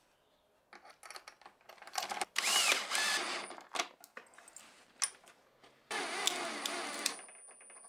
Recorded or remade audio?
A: recorded